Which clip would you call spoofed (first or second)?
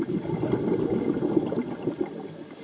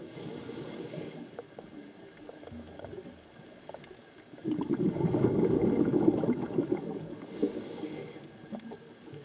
second